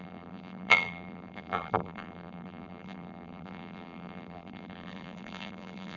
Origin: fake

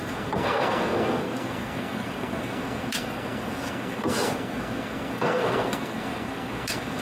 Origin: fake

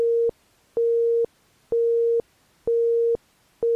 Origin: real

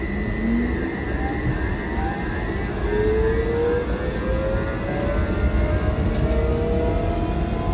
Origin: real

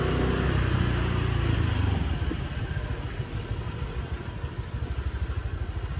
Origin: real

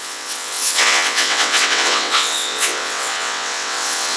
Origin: fake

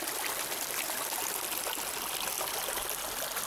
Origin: real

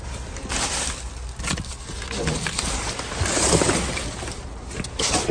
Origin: real